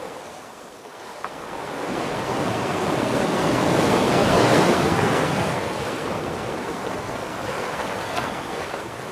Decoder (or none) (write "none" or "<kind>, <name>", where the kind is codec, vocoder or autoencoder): codec, SNAC